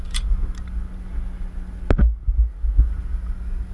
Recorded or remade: recorded